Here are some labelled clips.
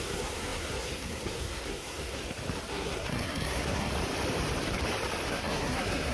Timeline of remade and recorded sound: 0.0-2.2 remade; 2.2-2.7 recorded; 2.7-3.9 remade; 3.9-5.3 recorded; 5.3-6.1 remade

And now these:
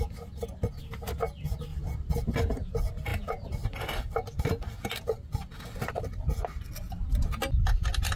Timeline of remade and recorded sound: 0.0-8.2 recorded